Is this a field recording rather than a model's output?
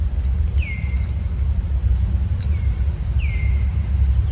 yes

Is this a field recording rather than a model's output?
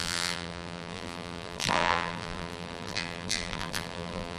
no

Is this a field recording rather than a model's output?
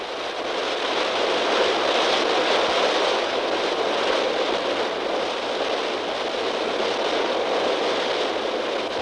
yes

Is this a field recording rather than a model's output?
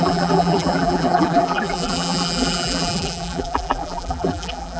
no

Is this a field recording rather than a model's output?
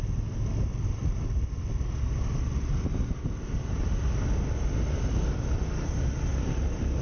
yes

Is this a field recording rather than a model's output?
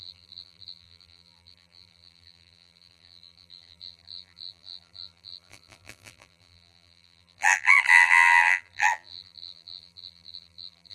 no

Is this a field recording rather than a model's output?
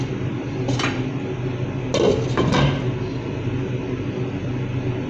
yes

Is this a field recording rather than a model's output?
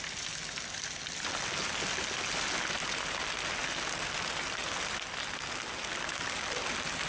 yes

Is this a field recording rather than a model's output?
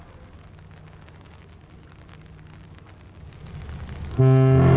yes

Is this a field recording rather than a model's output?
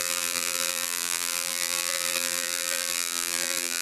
no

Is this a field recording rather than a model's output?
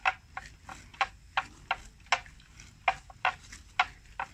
yes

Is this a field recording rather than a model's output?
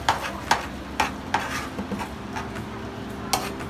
yes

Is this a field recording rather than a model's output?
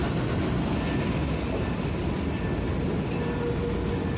yes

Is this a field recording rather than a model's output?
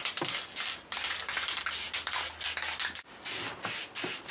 yes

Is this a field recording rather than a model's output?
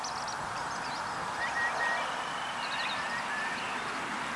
yes